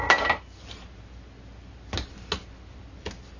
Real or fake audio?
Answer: real